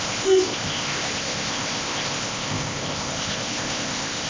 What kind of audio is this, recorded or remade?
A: remade